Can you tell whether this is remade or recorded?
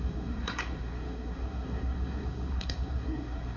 remade